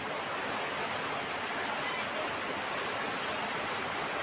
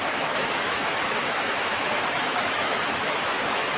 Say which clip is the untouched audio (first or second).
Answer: first